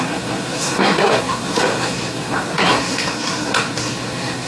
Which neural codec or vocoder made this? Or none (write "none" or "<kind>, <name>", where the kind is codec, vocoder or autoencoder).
codec, SNAC